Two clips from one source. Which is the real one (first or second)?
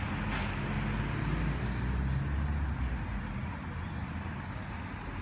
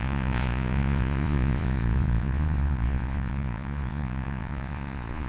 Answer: first